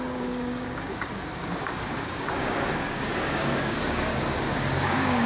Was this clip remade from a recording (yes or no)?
yes